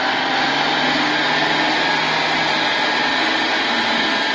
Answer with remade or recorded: recorded